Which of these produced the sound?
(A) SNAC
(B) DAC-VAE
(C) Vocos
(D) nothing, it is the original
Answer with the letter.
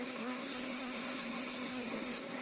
A